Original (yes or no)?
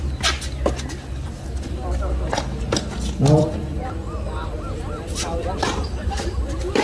yes